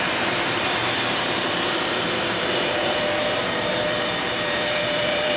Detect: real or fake fake